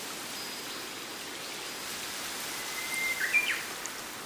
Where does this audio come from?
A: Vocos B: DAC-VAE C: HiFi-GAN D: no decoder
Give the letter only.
D